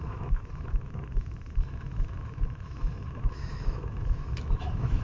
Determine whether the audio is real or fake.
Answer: fake